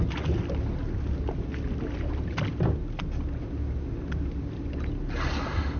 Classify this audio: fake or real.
real